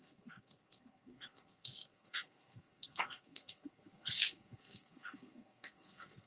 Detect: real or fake fake